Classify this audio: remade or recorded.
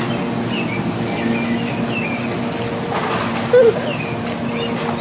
recorded